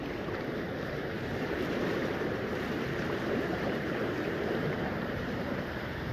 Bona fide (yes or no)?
no